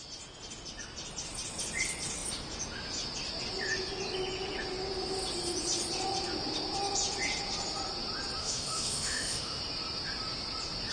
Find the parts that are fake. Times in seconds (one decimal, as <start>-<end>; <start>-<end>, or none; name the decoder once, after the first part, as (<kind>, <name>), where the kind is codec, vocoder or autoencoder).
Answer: 8.4-9.6 (autoencoder, DAC-VAE)